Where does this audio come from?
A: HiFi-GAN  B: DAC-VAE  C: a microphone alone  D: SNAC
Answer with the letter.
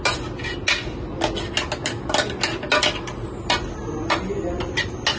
C